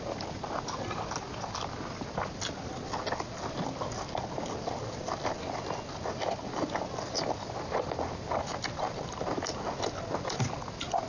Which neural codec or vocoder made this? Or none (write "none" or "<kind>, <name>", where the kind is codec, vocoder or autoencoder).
none